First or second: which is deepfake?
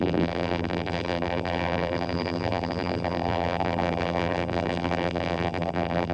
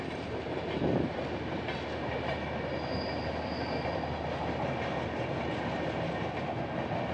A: first